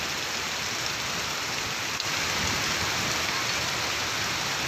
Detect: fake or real real